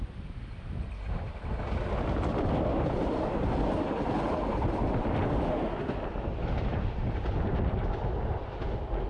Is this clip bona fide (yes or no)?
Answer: yes